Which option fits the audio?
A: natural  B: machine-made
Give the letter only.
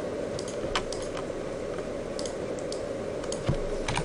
A